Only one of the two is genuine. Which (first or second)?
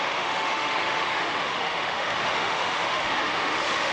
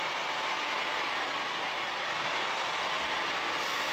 second